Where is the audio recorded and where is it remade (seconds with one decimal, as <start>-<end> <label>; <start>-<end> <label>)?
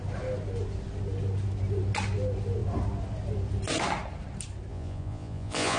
0.0-4.7 recorded; 4.7-5.8 remade